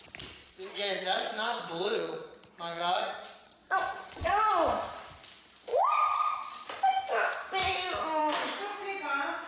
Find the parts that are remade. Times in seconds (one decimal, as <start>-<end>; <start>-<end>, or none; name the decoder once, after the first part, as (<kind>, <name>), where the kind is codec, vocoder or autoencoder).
0.4-4.5 (vocoder, Vocos); 5.7-6.7